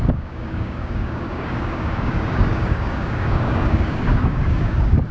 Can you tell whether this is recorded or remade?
remade